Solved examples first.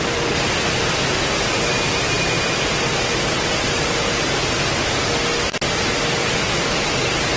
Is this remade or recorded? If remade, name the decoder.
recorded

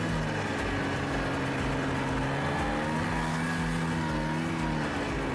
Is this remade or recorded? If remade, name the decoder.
recorded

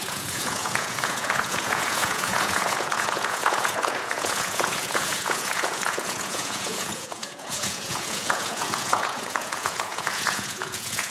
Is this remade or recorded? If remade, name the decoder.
remade, vocoder, Vocos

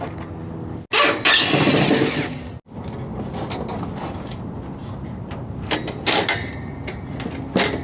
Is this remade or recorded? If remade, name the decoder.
recorded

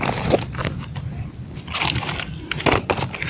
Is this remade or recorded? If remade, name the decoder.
recorded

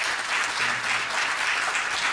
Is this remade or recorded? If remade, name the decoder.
recorded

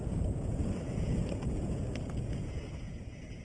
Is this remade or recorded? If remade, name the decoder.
remade, vocoder, Vocos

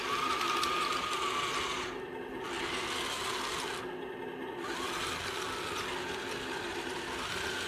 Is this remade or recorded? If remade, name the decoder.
recorded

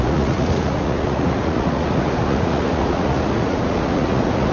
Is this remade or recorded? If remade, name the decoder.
remade, vocoder, Vocos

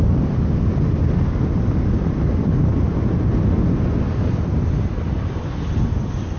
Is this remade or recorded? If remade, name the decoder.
recorded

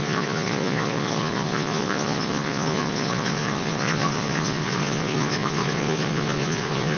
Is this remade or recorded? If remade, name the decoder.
remade, vocoder, Vocos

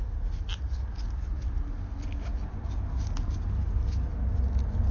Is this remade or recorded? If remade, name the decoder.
recorded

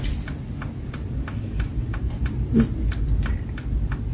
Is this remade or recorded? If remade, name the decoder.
recorded